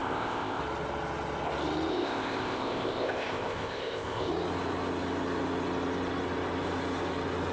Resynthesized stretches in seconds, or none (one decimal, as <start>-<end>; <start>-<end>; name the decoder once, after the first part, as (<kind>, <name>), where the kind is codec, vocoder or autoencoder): 0.0-0.6 (codec, ZipCodec); 1.9-4.3